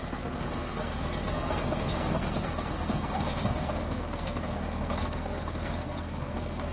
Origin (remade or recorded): remade